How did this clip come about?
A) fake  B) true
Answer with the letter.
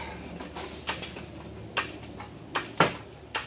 B